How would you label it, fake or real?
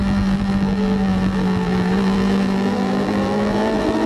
fake